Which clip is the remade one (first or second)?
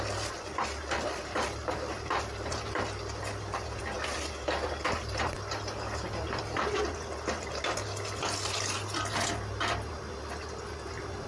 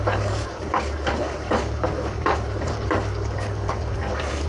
second